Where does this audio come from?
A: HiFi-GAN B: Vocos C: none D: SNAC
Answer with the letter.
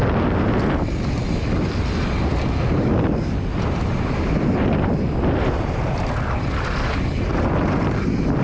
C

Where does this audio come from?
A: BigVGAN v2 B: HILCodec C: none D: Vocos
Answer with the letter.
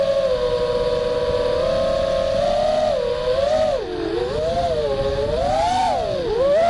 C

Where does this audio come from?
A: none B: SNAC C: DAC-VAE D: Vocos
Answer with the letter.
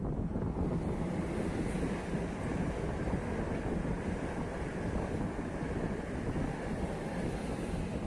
A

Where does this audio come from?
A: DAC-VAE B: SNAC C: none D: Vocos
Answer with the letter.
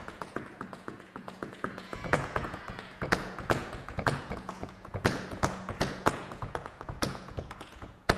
D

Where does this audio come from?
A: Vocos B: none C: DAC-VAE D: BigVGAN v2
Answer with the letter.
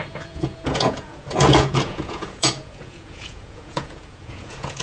A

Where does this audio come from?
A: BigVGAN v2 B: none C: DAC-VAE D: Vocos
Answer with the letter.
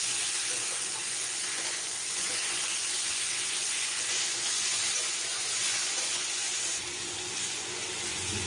D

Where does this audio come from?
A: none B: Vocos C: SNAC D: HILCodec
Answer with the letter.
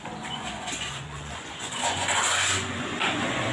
B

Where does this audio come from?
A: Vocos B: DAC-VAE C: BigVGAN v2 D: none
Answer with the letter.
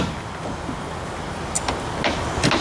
D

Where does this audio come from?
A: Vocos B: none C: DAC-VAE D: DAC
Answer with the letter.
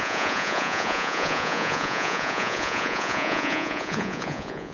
A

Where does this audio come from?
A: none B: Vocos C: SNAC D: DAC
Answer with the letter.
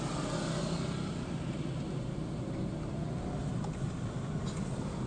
A